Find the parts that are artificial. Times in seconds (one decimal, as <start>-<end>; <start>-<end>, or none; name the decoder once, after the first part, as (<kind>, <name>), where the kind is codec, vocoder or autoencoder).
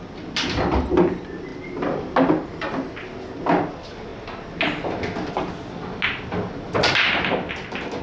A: none